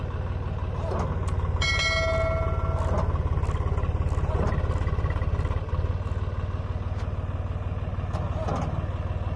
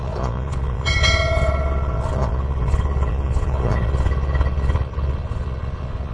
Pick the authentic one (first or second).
first